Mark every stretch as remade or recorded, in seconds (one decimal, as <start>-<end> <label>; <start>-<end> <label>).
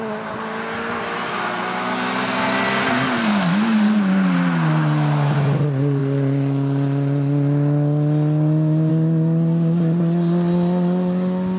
0.0-11.6 recorded